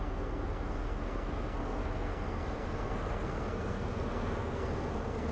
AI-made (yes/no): yes